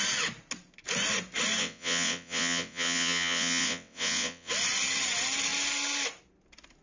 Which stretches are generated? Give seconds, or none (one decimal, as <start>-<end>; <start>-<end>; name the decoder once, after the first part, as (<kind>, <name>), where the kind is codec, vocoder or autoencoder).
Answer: 1.6-4.5 (vocoder, WaveNeXt)